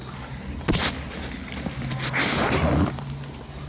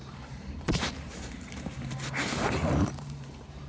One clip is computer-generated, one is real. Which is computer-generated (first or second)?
second